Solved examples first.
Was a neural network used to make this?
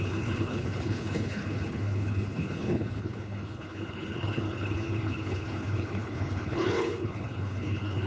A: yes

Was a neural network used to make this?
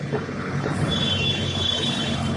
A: yes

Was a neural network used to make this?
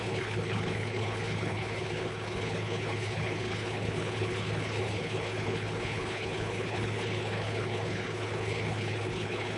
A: yes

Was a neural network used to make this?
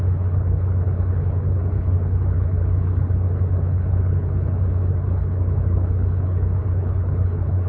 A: yes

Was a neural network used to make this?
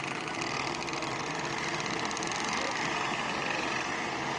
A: no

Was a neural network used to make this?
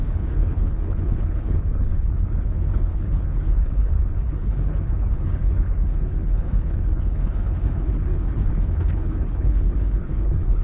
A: yes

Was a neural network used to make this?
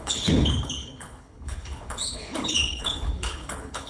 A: yes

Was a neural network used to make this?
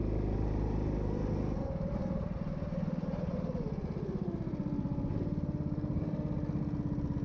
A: no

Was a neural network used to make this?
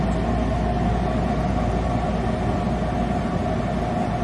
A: no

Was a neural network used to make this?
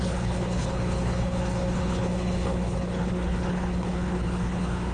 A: yes